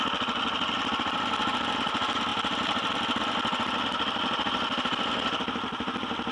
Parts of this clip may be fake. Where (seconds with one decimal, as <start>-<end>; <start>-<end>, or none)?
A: none